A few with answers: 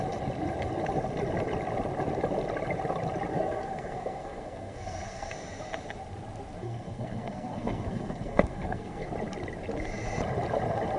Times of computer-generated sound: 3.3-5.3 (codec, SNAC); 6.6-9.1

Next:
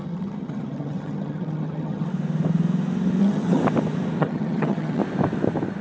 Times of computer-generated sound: 0.0-2.1 (vocoder, HiFi-GAN); 3.2-3.6; 4.2-5.0

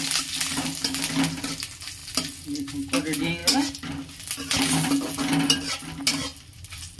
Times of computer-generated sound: 6.3-7.0 (vocoder, BigVGAN v2)

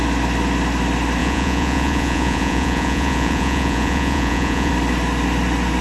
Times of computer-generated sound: 1.2-4.7 (vocoder, Vocos)

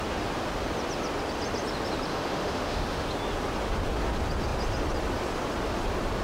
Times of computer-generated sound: 2.1-3.1 (autoencoder, DAC-VAE)

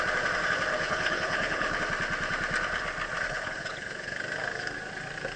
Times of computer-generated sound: 0.7-1.8 (codec, HILCodec); 3.3-4.2

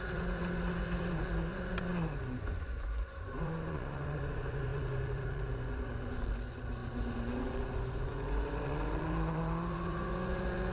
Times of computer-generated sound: 0.0-10.7 (vocoder, Vocos)

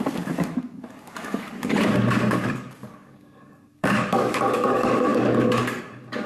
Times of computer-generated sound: 0.0-6.3 (codec, DAC)